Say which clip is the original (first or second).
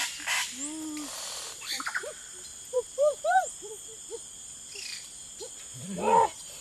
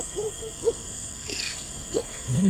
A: first